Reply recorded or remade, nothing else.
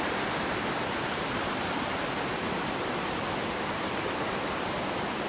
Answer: remade